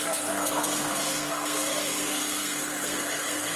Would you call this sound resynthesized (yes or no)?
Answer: yes